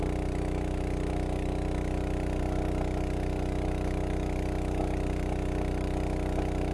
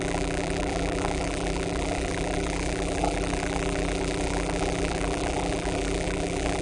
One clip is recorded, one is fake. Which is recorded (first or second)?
first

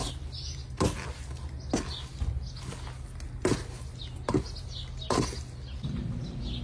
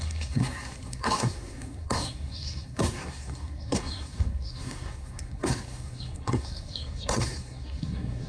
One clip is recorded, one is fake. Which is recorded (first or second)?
first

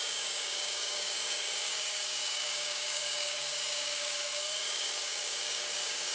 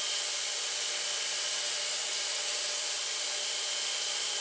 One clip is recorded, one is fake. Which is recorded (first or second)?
second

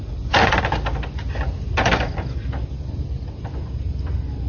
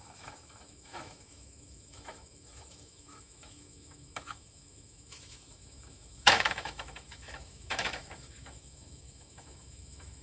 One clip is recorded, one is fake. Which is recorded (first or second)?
first